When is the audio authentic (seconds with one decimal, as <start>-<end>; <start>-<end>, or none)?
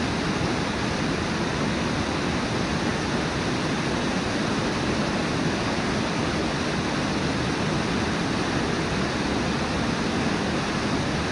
0.0-11.3